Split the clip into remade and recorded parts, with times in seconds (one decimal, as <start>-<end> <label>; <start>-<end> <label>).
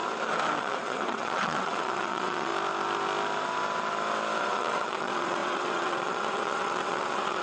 0.0-0.6 recorded; 0.6-2.5 remade; 2.5-4.4 recorded; 4.4-7.4 remade